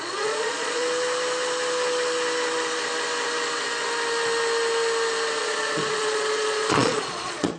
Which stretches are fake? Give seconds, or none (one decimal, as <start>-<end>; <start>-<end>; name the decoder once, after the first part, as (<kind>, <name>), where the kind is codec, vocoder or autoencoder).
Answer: 0.0-0.8 (vocoder, Vocos); 5.4-7.6